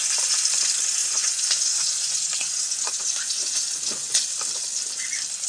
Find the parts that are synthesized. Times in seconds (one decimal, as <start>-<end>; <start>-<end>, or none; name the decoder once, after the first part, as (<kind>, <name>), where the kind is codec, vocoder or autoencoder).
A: 1.0-4.3 (vocoder, Vocos)